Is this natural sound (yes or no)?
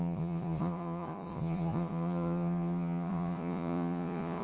no